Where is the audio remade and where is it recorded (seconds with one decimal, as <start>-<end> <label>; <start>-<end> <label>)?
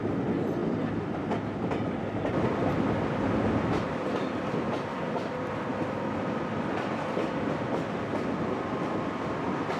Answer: 0.0-0.6 recorded; 0.6-1.3 remade; 1.3-5.7 recorded; 5.7-8.0 remade; 8.0-9.8 recorded